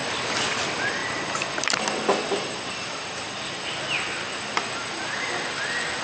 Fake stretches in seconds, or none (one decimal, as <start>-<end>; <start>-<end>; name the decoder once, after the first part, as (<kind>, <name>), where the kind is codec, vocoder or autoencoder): 0.0-0.6 (vocoder, BigVGAN v2); 1.0-4.6